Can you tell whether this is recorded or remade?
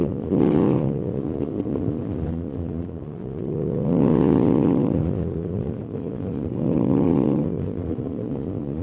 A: remade